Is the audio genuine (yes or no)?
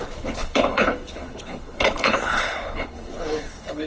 no